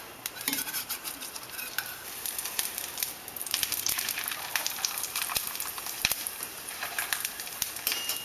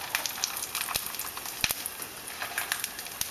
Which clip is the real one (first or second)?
second